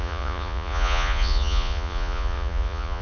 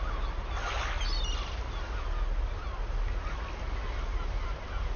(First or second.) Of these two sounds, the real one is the second